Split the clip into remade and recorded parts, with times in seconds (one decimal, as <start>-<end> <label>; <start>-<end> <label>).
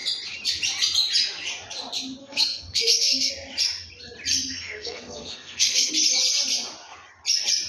0.0-2.2 recorded; 2.2-3.3 remade; 3.3-4.3 recorded; 4.3-5.9 remade; 5.9-7.7 recorded